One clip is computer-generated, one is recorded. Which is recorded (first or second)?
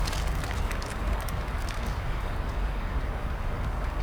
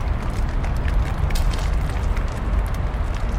second